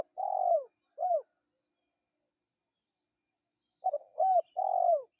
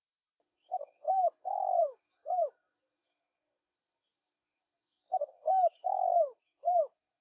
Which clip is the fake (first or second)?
second